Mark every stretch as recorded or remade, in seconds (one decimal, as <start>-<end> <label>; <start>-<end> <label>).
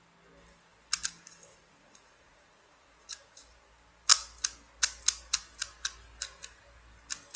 0.0-1.5 recorded; 1.5-3.4 remade; 3.4-7.4 recorded